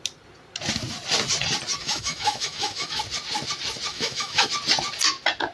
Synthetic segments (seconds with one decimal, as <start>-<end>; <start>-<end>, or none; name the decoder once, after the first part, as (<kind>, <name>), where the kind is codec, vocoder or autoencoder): 1.8-3.0 (autoencoder, DAC-VAE); 3.9-4.5